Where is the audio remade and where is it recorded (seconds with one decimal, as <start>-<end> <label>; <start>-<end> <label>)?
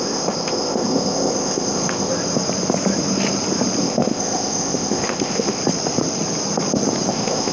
0.0-2.1 remade; 2.1-3.8 recorded; 3.8-5.6 remade; 5.6-7.1 recorded; 7.1-7.5 remade